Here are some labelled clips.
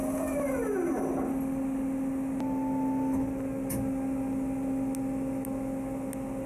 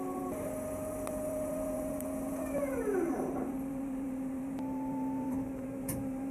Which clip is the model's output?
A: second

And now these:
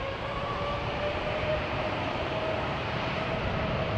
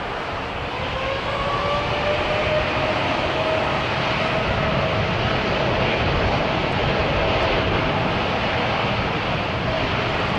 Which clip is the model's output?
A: first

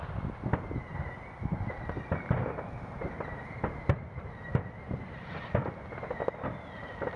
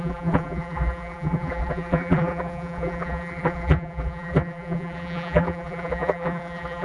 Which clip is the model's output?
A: second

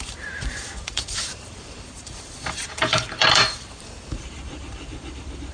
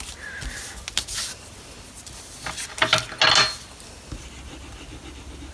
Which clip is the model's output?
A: first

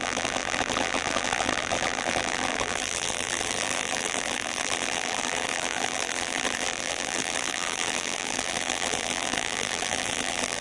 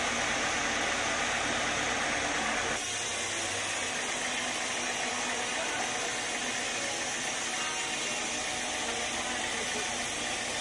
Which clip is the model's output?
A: first